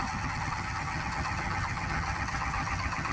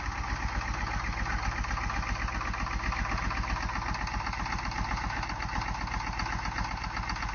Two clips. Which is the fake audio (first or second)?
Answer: first